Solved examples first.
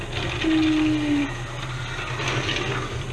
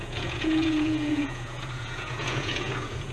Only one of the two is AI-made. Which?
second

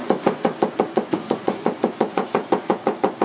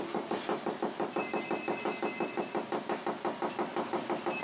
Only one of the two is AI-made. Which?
first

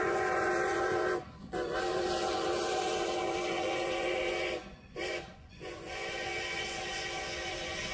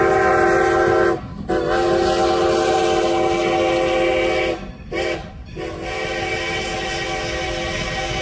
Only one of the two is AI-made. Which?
first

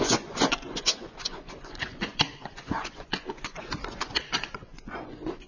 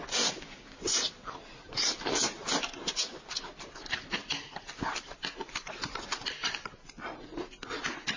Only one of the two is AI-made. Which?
first